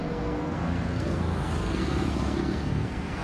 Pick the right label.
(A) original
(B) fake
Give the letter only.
B